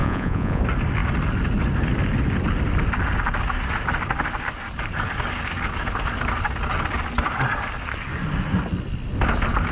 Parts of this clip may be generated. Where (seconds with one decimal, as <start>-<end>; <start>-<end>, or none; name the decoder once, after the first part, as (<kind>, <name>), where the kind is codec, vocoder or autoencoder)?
0.0-0.6 (vocoder, Vocos)